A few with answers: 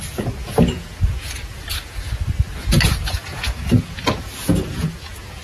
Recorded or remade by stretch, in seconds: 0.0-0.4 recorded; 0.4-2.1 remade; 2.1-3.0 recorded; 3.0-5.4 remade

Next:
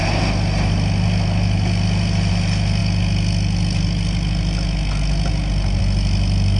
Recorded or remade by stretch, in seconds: 0.0-6.6 recorded